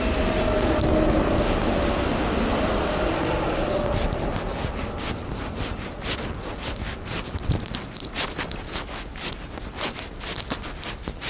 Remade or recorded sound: recorded